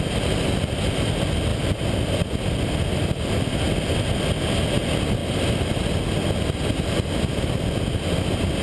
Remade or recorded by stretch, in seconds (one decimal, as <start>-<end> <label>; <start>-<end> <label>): 0.0-8.6 recorded